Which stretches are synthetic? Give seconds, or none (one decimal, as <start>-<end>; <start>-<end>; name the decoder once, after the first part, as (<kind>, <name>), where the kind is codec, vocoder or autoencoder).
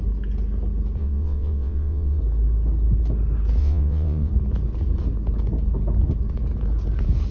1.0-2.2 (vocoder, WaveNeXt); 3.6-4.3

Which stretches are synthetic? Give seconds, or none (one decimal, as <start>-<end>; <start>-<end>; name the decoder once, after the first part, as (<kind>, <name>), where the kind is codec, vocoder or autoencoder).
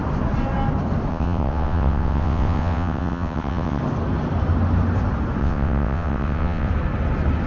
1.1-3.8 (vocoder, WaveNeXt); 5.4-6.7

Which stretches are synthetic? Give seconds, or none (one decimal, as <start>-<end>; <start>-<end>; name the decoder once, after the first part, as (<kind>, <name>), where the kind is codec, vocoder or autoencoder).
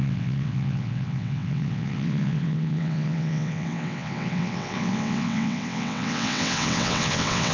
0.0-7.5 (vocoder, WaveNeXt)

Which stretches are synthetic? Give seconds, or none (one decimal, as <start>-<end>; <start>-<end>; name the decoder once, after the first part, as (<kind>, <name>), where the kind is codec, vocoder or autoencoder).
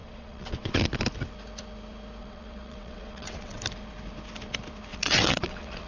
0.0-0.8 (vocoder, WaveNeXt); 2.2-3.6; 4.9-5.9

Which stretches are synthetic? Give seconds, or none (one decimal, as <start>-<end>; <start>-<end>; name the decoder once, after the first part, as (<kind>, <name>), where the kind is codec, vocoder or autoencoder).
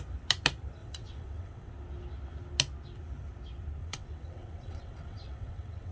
0.8-1.7 (vocoder, WaveNeXt); 3.8-5.9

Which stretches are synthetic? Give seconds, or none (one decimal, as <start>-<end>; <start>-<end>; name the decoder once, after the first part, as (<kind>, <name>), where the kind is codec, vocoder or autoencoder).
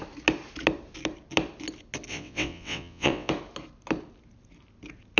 2.1-3.3 (vocoder, WaveNeXt)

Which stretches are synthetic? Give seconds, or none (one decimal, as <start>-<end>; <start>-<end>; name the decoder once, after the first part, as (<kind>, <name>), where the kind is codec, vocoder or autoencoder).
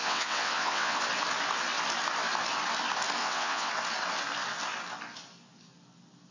0.0-1.0 (vocoder, WaveNeXt); 3.2-3.7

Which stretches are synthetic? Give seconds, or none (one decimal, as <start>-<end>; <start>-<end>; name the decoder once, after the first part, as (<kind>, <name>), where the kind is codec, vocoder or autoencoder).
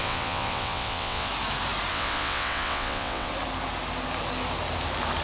0.0-1.3 (vocoder, WaveNeXt); 1.9-3.3